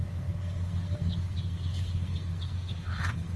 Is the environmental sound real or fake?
fake